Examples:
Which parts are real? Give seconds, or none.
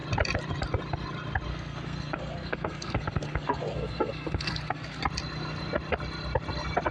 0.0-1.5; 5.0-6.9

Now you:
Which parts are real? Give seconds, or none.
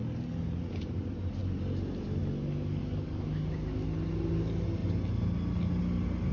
0.0-2.8; 3.7-6.3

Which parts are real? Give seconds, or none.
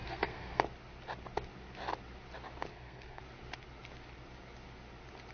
0.6-2.7; 3.2-5.3